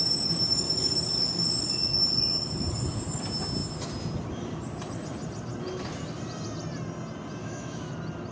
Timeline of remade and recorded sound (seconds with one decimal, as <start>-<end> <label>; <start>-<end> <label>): 0.0-7.4 recorded; 7.4-7.9 remade; 7.9-8.3 recorded